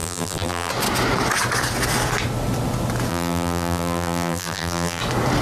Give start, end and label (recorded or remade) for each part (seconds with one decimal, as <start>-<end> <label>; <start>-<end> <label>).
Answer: 0.0-0.7 remade; 0.7-3.1 recorded; 3.1-5.0 remade; 5.0-5.4 recorded